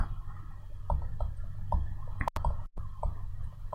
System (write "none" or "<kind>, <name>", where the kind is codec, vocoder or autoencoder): none